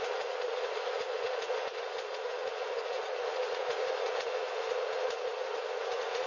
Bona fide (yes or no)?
no